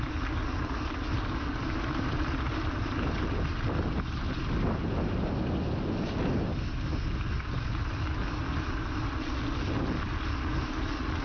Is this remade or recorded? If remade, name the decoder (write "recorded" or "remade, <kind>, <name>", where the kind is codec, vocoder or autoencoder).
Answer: recorded